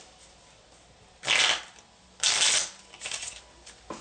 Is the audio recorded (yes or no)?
yes